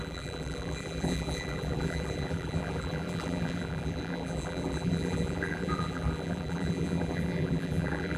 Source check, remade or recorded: remade